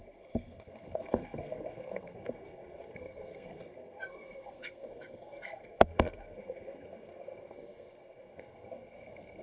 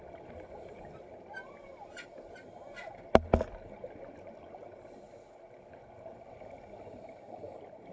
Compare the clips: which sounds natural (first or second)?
second